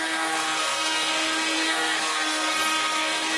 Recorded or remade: remade